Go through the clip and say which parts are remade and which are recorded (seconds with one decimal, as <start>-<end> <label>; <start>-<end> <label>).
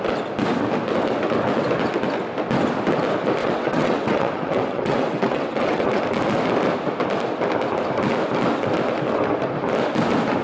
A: 0.0-3.4 recorded; 3.4-6.0 remade; 6.0-10.4 recorded